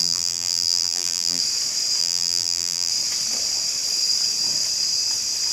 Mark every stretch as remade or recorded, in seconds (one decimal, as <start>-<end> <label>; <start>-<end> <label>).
0.0-1.4 remade; 1.4-2.0 recorded; 2.0-2.9 remade; 2.9-5.5 recorded